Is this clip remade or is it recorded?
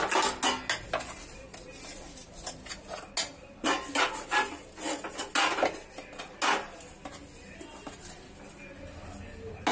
recorded